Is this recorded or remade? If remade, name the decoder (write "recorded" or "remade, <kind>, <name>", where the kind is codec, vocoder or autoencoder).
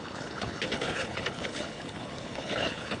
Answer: remade, codec, HILCodec